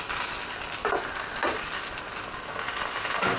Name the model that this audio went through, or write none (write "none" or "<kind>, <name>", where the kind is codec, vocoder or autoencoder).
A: none